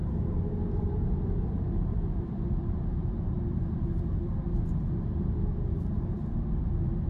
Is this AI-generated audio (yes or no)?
yes